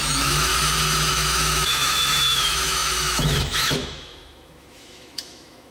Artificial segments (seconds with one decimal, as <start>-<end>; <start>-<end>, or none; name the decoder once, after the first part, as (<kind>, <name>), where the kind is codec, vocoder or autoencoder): 0.0-0.5 (autoencoder, DAC-VAE); 1.1-5.7